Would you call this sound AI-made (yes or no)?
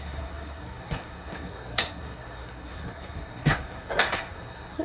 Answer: yes